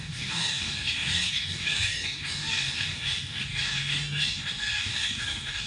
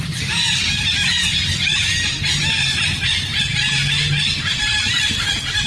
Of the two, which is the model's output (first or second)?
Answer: first